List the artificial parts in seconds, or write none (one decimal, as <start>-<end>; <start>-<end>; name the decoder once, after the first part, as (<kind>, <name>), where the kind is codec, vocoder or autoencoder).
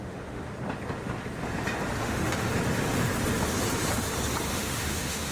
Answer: 0.0-0.5 (autoencoder, DAC-VAE); 2.0-2.5; 4.5-5.3